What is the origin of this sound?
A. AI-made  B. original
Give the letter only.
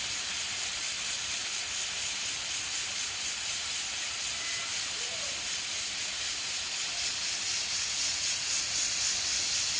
B